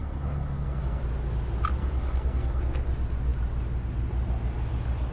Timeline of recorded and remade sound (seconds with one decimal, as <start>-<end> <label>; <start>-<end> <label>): 0.0-1.0 remade; 1.0-1.8 recorded; 1.8-2.6 remade; 2.6-5.1 recorded